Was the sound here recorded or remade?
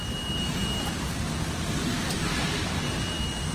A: recorded